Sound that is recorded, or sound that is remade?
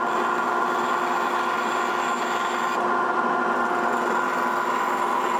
recorded